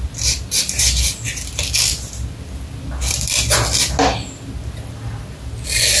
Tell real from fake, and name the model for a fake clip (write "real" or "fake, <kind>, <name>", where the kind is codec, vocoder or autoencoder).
real